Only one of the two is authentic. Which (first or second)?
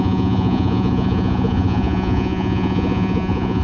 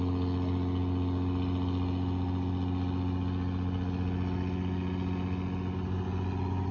second